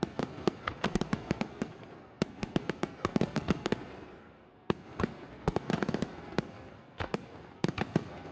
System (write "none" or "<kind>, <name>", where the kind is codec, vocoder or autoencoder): codec, SNAC